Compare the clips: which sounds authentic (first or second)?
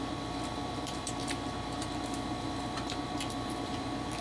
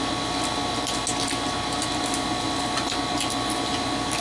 second